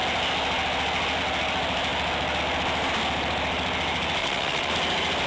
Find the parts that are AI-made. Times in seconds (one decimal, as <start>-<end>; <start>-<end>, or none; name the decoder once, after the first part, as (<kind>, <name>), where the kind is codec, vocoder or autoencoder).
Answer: 4.2-4.7 (vocoder, WaveNeXt)